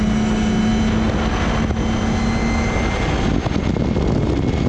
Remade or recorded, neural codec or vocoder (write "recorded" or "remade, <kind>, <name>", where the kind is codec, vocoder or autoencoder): recorded